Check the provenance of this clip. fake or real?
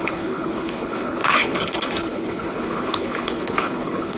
fake